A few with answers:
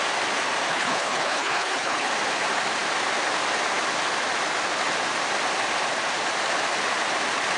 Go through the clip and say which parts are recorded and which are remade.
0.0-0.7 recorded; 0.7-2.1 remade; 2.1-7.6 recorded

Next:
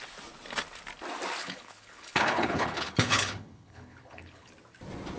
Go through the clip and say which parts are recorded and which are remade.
0.0-1.4 recorded; 1.4-4.5 remade; 4.5-5.2 recorded

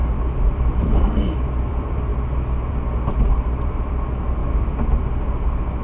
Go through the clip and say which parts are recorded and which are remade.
0.0-2.1 remade; 2.1-2.7 recorded; 2.7-4.4 remade; 4.4-5.0 recorded; 5.0-5.8 remade